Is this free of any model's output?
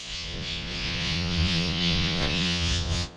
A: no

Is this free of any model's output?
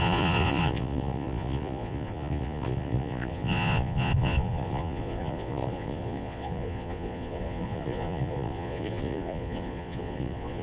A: no